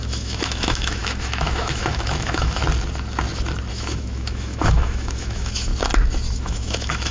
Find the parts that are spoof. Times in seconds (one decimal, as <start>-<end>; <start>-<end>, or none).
0.0-2.6; 3.7-5.7; 6.3-7.1